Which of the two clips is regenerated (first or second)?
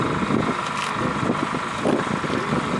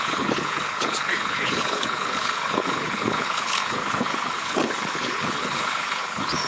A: second